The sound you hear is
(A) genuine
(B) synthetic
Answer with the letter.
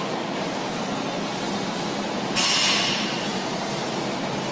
A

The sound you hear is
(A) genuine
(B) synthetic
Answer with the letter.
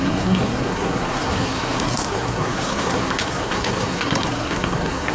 B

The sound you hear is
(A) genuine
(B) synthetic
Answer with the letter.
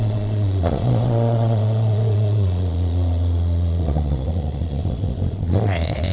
B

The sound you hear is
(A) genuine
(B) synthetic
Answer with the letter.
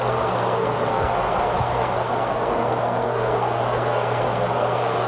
B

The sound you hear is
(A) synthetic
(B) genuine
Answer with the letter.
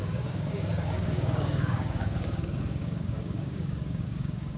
A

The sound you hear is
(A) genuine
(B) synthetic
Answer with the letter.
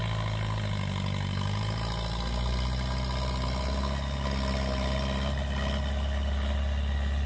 A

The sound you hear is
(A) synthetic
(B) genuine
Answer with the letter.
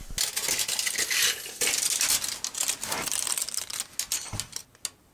B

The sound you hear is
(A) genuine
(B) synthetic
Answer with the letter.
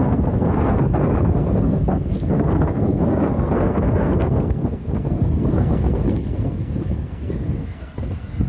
B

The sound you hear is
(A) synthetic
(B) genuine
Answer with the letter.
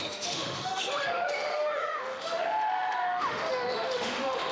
A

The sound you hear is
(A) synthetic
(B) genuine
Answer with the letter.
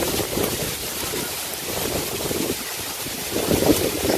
B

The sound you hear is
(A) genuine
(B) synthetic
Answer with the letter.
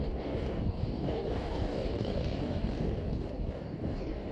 B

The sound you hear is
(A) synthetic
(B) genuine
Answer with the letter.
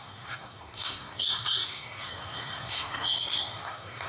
A